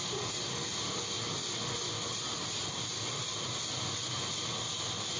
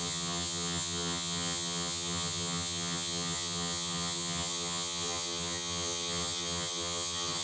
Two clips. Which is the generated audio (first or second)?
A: second